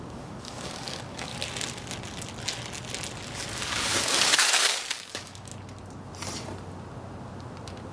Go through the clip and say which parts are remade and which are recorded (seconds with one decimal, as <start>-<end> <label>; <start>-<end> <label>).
0.0-1.3 remade; 1.3-3.6 recorded; 3.6-5.5 remade; 5.5-7.9 recorded